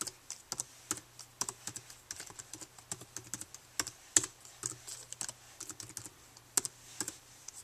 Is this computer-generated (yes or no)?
no